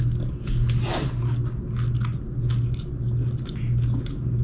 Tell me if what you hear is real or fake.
real